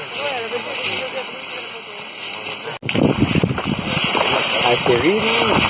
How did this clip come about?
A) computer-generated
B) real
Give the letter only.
B